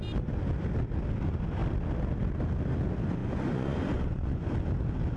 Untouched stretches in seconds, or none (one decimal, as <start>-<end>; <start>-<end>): 0.0-3.2; 4.5-5.2